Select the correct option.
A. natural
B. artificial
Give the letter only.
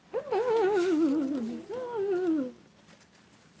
A